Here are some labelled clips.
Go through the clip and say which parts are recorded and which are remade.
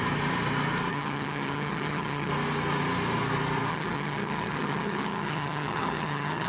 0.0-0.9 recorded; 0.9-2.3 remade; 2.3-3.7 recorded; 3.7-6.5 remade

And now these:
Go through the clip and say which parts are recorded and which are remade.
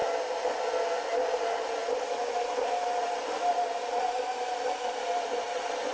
0.0-5.9 recorded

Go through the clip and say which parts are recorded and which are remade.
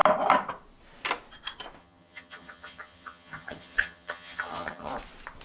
0.0-1.8 recorded; 1.8-4.9 remade; 4.9-5.4 recorded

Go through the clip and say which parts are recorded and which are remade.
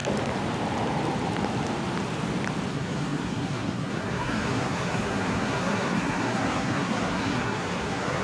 0.0-2.7 recorded; 2.7-8.2 remade